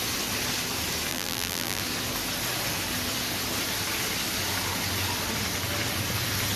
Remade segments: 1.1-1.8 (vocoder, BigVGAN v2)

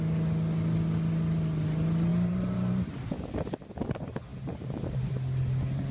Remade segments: 2.1-2.9 (vocoder, BigVGAN v2); 4.3-5.1

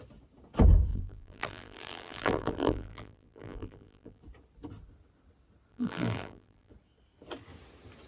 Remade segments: 0.9-4.2 (vocoder, BigVGAN v2); 5.7-6.7

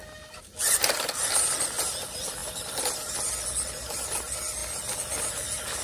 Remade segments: 2.4-3.2 (vocoder, BigVGAN v2)